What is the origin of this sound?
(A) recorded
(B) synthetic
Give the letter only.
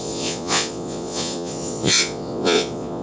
B